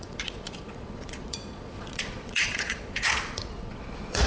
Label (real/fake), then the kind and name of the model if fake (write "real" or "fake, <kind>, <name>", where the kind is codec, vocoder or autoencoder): fake, vocoder, Vocos